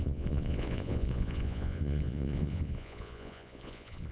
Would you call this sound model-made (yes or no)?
yes